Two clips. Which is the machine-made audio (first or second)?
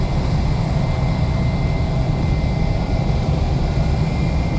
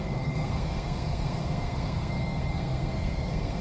second